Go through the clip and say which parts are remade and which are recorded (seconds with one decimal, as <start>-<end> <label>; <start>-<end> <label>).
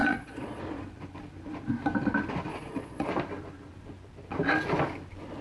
0.0-0.6 remade; 0.6-2.5 recorded; 2.5-3.1 remade; 3.1-5.4 recorded